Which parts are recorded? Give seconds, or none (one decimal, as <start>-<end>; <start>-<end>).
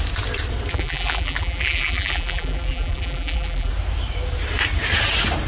0.0-0.7; 3.7-5.5